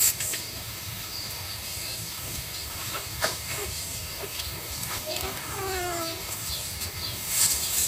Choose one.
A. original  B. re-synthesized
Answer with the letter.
B